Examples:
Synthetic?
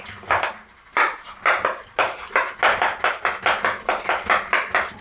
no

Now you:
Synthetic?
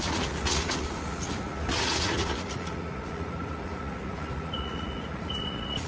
yes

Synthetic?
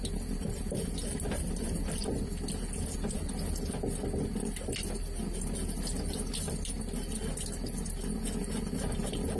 no